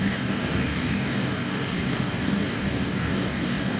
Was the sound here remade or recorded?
remade